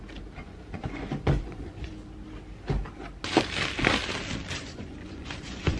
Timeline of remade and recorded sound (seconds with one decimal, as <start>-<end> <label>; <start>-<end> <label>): 0.0-0.4 recorded; 0.4-1.9 remade; 1.9-4.6 recorded; 4.6-5.8 remade